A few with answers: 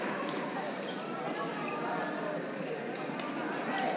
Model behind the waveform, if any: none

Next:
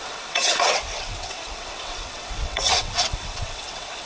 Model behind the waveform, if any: vocoder, WaveNeXt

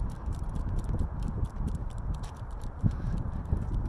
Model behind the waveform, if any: vocoder, BigVGAN v2